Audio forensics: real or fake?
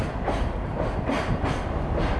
real